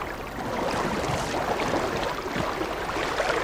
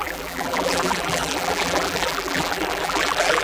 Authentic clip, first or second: first